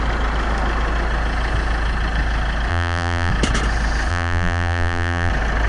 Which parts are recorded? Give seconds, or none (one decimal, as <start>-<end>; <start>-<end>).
0.0-2.7; 3.3-4.1; 5.3-5.7